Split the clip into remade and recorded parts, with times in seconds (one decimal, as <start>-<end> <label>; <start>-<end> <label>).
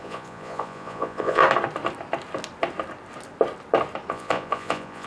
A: 0.0-1.4 remade; 1.4-4.1 recorded; 4.1-5.1 remade